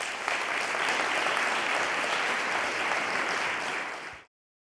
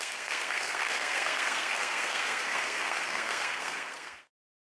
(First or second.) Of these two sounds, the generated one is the second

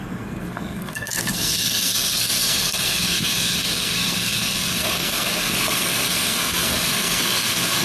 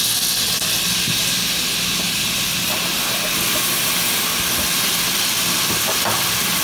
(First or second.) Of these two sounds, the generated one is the first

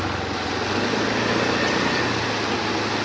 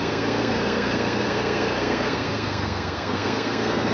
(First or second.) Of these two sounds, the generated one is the second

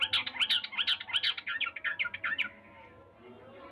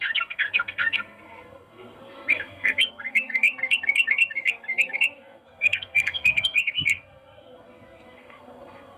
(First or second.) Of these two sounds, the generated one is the second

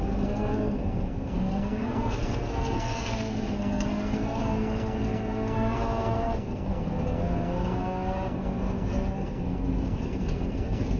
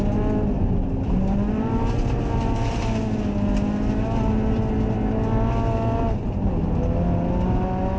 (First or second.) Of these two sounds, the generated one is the first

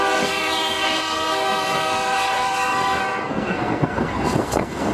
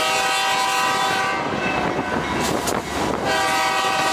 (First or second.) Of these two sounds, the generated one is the first